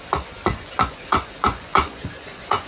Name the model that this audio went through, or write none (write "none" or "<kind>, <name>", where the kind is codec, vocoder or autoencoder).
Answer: vocoder, Vocos